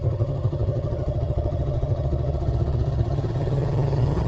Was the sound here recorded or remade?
remade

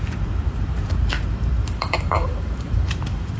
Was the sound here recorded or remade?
remade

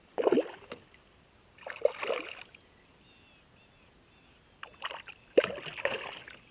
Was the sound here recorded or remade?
recorded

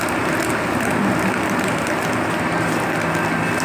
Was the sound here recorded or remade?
recorded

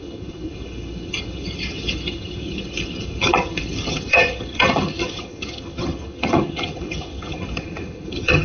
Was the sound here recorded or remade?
remade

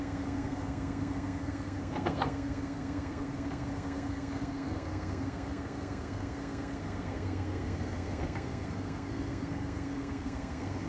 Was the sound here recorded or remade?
remade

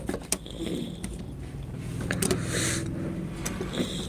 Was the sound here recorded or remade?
recorded